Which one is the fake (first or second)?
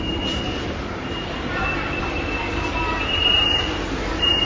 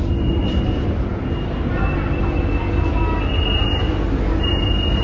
first